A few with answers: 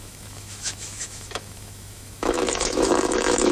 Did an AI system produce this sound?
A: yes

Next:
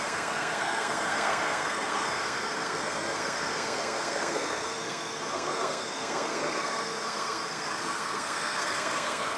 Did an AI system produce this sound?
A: yes